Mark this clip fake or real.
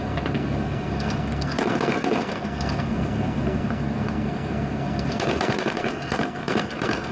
fake